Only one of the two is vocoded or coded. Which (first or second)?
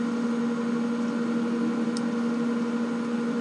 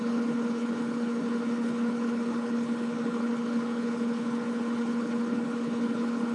second